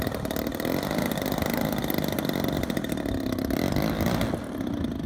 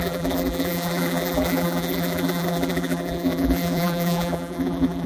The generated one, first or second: second